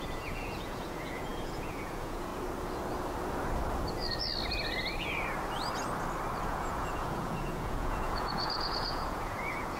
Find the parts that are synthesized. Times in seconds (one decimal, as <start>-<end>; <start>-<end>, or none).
0.0-2.3; 6.5-9.8